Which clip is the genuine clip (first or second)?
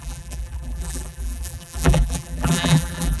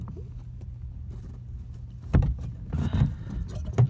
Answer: second